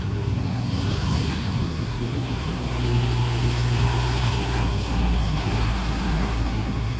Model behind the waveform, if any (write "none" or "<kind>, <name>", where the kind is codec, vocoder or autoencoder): codec, SNAC